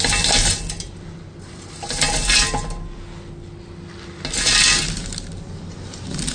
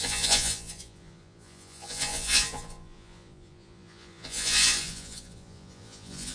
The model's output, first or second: second